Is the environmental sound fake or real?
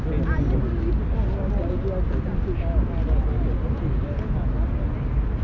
real